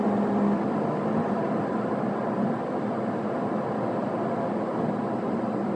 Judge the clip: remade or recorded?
recorded